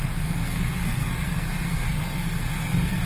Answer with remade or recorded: remade